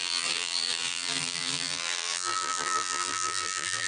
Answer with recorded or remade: remade